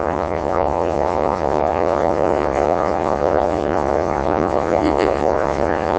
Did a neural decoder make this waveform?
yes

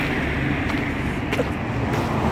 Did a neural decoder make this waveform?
no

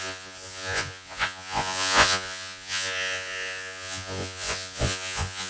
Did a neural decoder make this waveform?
yes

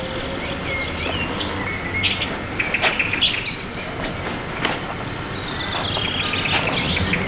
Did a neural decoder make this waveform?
no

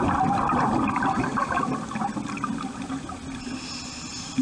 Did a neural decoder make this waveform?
no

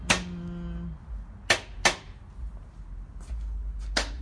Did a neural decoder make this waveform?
no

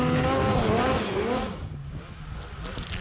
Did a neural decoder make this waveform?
no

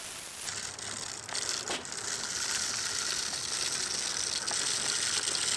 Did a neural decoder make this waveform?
no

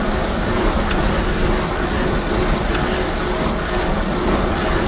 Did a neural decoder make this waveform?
no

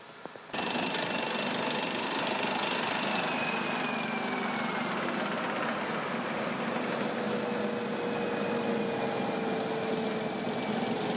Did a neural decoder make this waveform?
no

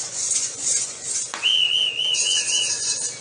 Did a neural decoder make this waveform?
yes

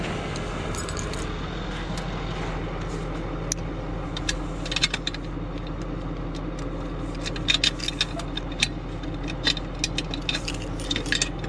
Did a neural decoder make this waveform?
no